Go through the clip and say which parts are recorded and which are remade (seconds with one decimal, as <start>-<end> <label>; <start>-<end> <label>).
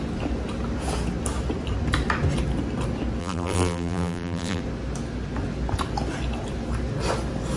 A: 0.0-3.2 recorded; 3.2-4.6 remade; 4.6-7.6 recorded